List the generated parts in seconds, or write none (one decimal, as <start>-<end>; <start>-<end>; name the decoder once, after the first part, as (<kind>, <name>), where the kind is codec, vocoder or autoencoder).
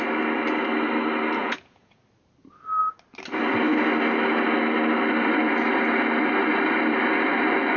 1.4-2.0 (vocoder, Vocos)